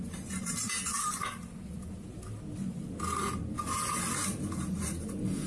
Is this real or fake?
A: real